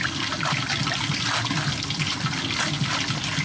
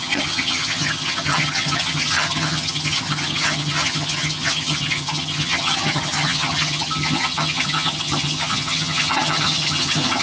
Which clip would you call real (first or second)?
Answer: first